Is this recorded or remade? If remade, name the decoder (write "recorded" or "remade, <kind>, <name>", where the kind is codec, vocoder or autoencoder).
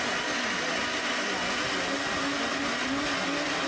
recorded